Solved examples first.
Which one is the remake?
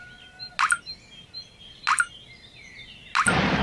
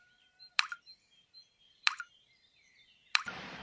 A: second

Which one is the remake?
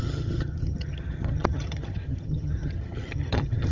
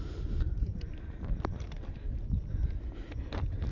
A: first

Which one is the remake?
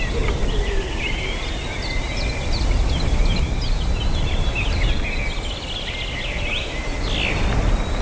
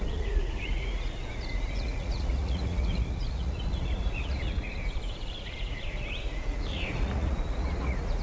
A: second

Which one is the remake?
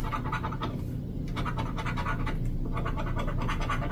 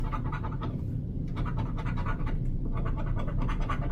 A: second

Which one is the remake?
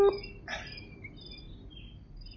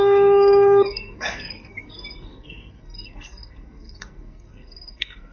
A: second